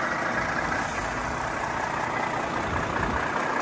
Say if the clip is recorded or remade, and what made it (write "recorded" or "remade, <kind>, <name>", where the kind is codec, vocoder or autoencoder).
recorded